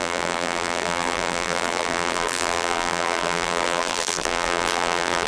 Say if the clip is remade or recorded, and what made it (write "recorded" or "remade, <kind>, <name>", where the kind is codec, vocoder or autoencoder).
remade, vocoder, BigVGAN v2